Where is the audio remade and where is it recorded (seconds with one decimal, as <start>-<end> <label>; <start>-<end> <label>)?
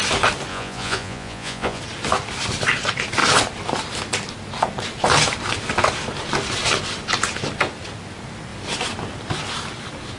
0.0-0.5 recorded; 0.5-1.8 remade; 1.8-10.2 recorded